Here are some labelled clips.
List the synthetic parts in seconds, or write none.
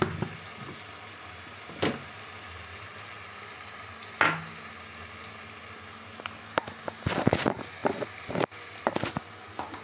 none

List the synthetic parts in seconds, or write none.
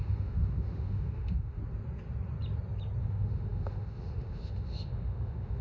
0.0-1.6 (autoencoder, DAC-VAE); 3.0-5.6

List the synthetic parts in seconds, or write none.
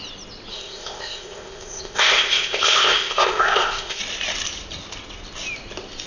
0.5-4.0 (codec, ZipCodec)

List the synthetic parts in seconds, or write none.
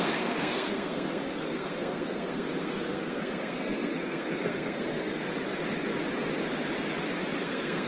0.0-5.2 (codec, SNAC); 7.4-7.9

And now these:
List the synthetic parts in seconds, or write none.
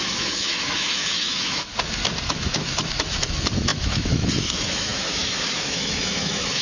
0.0-1.7 (autoencoder, DAC-VAE); 2.3-6.6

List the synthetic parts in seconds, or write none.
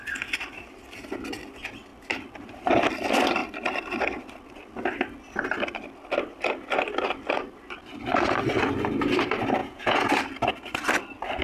9.6-10.1 (vocoder, Vocos)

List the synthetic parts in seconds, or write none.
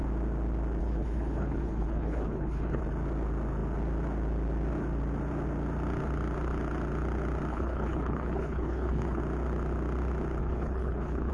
0.8-2.8 (codec, HILCodec); 7.5-9.2; 10.4-11.3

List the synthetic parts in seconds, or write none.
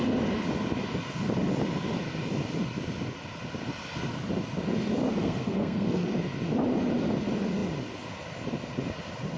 5.2-6.1 (codec, SNAC)